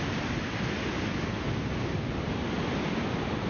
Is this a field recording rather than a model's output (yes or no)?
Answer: yes